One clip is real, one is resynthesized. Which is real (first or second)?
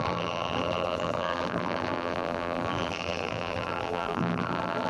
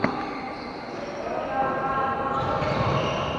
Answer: second